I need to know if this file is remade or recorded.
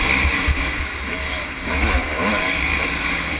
remade